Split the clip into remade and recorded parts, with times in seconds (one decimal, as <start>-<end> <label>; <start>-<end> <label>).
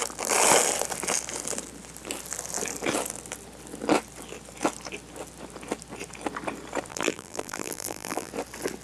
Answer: 0.0-6.9 recorded; 6.9-8.3 remade; 8.3-8.8 recorded